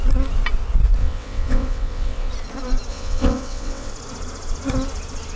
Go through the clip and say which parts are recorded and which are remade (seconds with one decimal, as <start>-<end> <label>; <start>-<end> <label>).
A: 0.0-1.0 recorded; 1.0-2.3 remade; 2.3-2.9 recorded; 2.9-3.9 remade; 3.9-5.4 recorded